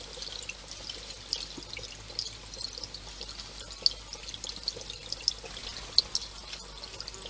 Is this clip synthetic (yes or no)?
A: no